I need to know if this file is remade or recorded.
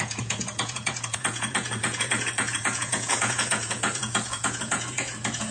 remade